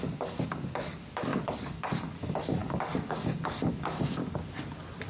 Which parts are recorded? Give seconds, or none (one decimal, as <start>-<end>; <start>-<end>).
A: 4.2-5.1